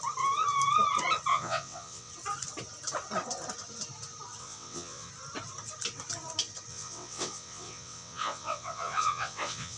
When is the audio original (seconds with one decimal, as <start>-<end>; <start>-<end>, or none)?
0.0-1.3; 2.1-4.4; 5.1-6.7